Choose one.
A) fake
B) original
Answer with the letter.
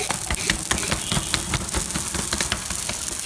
B